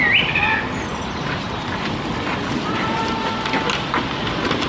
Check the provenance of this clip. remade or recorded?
recorded